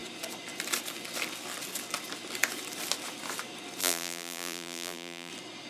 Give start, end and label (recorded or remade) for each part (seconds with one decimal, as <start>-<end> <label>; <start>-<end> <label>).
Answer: 0.0-3.8 recorded; 3.8-5.3 remade; 5.3-5.7 recorded